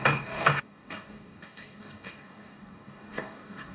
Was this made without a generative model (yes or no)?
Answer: no